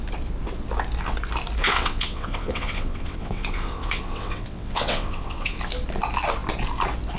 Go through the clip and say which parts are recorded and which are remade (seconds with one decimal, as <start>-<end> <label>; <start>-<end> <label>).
0.0-1.6 recorded; 1.6-5.6 remade; 5.6-7.2 recorded